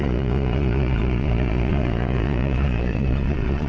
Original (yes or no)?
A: no